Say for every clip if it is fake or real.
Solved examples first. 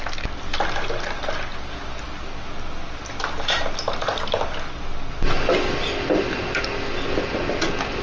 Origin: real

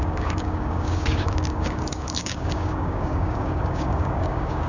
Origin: fake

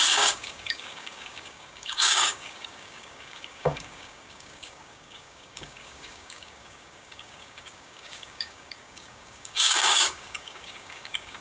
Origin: fake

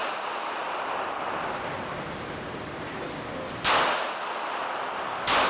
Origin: real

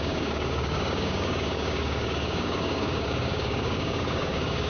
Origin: fake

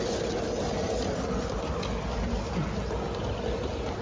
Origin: real